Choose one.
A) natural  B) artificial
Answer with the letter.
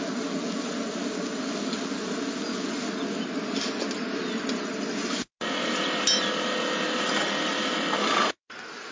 A